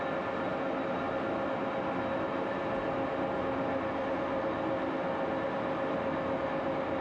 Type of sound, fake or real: real